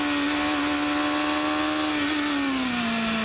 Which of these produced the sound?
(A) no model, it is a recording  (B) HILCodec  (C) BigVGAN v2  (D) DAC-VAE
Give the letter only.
A